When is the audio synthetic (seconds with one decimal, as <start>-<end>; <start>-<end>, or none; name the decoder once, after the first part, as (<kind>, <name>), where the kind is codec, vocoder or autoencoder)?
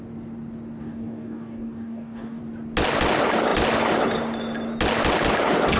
0.8-2.4 (codec, DAC)